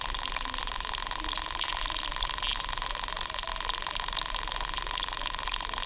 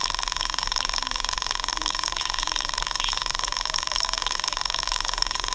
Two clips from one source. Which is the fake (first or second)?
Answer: second